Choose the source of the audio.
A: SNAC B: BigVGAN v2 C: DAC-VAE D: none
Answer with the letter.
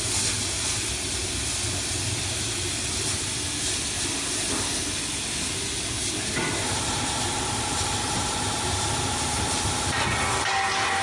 D